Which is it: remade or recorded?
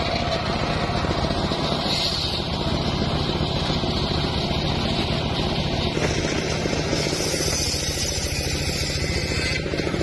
recorded